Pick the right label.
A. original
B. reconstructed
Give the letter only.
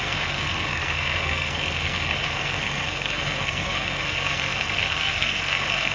B